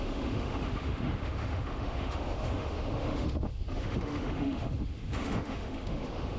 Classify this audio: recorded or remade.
remade